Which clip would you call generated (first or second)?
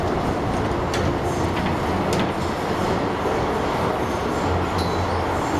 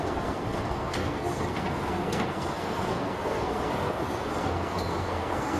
second